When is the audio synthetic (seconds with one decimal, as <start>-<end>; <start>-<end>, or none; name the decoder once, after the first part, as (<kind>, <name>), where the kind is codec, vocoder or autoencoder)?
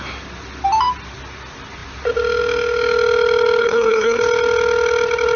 3.6-4.2 (codec, SNAC)